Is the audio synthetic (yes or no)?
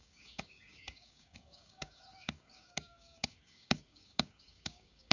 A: yes